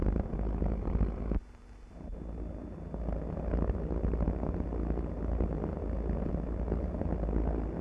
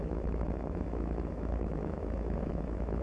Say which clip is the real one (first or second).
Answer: first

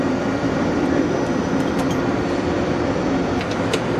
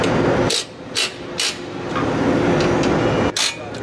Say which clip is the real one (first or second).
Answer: second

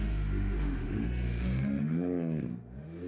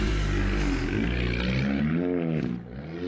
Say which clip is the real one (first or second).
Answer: second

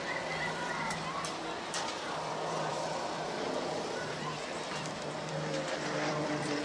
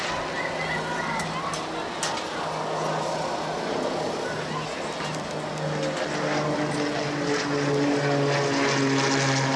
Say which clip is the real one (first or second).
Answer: second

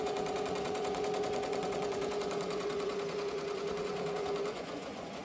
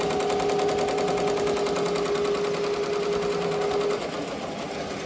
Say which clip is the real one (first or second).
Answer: second